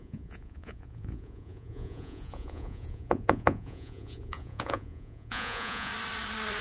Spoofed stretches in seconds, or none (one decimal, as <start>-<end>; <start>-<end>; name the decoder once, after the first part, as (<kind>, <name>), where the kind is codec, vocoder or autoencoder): 0.0-5.9 (vocoder, Vocos)